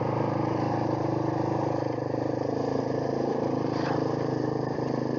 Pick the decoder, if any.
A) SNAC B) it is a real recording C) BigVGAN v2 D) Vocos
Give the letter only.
C